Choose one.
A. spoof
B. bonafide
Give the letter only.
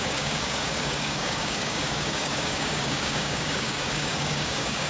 A